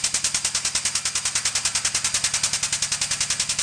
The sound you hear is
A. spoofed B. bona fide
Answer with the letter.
B